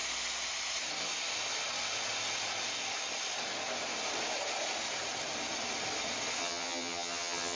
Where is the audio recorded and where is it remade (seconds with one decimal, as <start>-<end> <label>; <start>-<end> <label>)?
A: 0.0-6.4 recorded; 6.4-7.6 remade